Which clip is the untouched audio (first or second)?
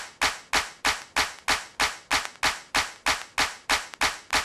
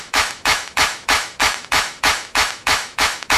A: first